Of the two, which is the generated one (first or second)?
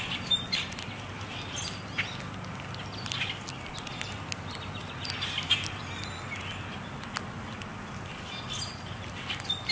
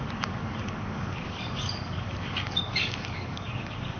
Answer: second